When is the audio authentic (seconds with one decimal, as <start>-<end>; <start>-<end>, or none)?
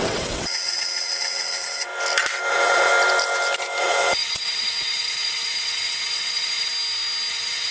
1.9-2.5; 2.9-3.8; 6.7-7.3